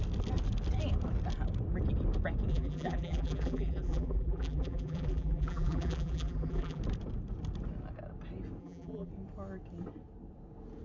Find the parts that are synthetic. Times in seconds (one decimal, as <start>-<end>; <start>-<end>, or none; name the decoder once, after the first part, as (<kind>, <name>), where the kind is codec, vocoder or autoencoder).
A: 2.5-6.8 (vocoder, BigVGAN v2); 8.6-9.1